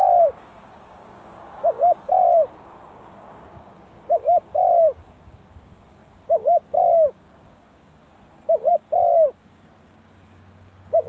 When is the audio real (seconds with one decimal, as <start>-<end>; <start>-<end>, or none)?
8.1-8.7